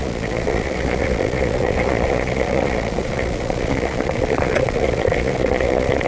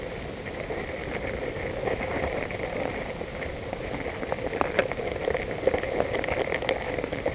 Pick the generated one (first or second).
first